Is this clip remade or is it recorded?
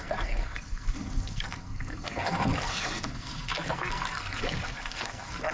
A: remade